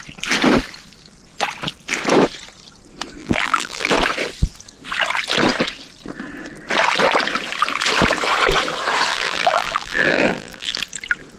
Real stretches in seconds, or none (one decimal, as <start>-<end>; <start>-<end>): 0.0-3.2; 3.9-9.1; 10.8-11.4